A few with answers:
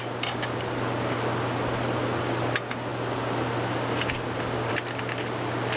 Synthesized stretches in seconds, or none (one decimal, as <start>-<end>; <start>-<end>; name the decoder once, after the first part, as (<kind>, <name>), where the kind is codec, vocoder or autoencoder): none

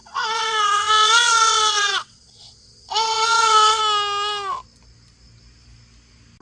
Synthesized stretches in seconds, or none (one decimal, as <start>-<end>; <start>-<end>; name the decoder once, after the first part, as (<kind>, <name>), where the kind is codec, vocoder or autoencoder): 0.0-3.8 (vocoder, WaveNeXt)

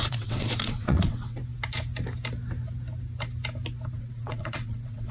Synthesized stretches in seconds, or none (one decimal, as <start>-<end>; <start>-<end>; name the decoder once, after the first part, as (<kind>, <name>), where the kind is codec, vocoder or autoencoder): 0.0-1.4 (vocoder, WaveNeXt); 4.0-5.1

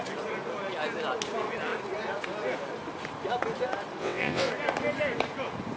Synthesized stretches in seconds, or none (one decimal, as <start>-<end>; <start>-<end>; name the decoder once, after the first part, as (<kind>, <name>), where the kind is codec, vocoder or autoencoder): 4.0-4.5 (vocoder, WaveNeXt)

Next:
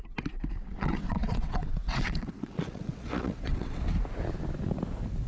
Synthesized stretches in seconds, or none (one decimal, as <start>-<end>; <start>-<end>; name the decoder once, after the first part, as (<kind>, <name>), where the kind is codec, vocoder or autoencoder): 0.6-3.8 (vocoder, WaveNeXt)

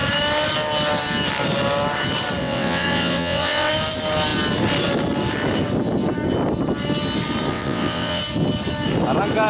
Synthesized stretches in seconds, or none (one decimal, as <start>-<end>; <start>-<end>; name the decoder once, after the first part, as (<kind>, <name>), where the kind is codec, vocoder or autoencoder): 2.4-3.7 (vocoder, WaveNeXt); 7.5-8.2

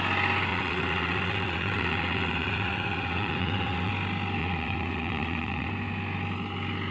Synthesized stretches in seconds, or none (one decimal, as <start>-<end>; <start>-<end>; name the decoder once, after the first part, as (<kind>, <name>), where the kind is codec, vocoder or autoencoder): 0.5-3.9 (vocoder, WaveNeXt); 4.4-5.7